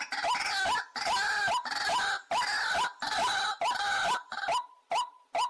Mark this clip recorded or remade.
recorded